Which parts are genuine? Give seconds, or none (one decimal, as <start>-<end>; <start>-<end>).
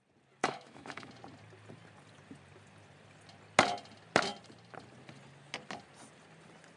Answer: 0.0-0.4; 1.1-6.8